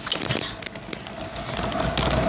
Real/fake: real